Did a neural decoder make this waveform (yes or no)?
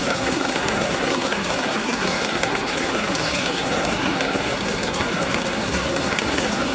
yes